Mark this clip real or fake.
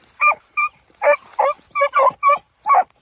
fake